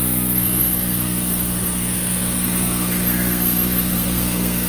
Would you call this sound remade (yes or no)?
yes